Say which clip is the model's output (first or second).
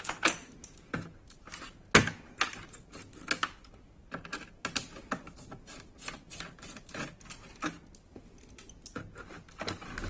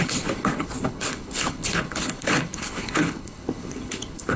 second